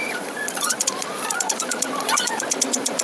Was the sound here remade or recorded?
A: remade